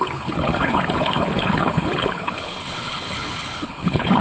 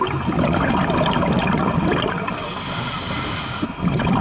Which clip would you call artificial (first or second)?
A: first